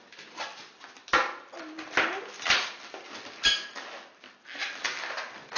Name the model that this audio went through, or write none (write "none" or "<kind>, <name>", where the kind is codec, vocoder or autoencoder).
none